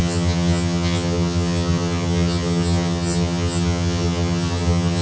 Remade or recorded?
remade